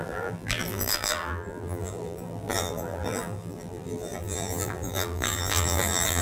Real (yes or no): no